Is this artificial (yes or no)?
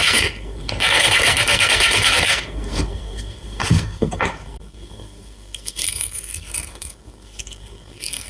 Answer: yes